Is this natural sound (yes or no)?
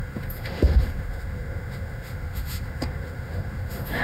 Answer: no